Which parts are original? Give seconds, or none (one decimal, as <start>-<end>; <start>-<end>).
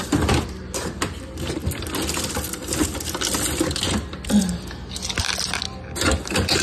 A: 0.0-6.6